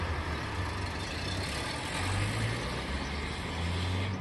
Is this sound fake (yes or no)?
no